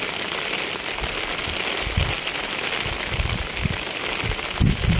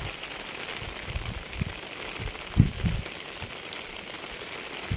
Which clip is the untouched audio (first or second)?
first